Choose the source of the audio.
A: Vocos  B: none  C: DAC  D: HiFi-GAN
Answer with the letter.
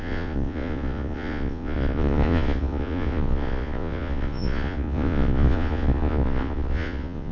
A